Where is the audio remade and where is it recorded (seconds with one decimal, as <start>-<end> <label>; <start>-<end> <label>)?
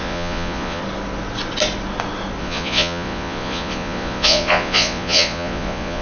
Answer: 0.0-0.8 remade; 0.8-2.4 recorded; 2.4-6.0 remade